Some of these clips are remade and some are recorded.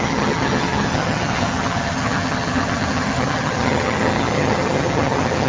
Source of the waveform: remade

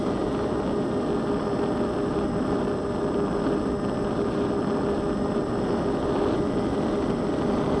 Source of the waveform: recorded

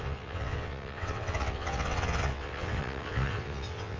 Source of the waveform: remade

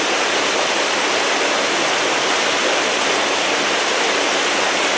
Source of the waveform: recorded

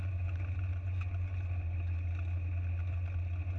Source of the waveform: recorded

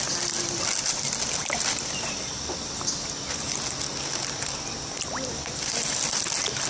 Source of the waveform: recorded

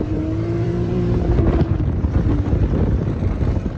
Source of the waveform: remade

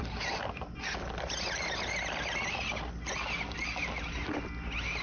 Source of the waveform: recorded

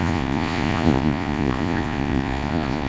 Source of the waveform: remade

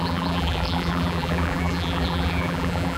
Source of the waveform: remade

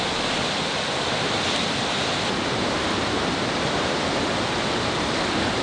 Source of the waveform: recorded